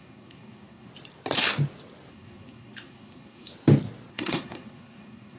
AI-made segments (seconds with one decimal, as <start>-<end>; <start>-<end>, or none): 0.0-0.9; 2.1-3.5; 4.1-5.4